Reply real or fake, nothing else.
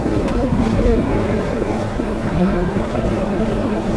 fake